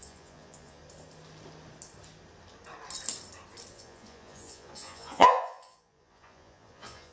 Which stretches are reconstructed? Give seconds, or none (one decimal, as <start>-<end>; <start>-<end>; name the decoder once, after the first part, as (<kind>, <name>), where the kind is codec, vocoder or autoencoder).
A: 0.0-0.8 (vocoder, Vocos); 3.7-7.1